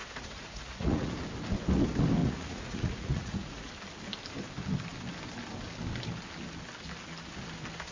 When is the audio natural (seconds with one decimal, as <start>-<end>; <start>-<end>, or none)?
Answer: 1.1-2.2; 3.7-7.9